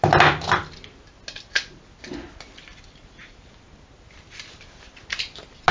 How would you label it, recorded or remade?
recorded